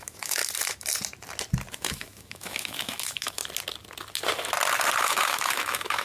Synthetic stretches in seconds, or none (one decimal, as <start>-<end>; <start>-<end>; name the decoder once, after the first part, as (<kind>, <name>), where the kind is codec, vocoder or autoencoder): 0.0-0.4 (autoencoder, DAC-VAE); 1.7-3.4; 5.0-6.0